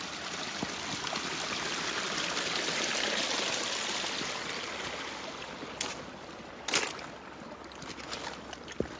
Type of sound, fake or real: real